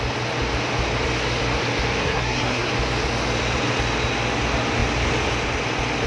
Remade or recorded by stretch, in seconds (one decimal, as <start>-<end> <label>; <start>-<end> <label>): 0.0-2.0 recorded; 2.0-2.7 remade; 2.7-6.1 recorded